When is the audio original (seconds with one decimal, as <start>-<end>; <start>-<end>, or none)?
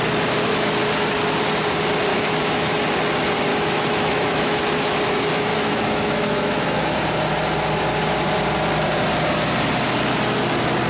0.0-2.1; 2.7-3.5; 4.6-5.5; 6.9-10.9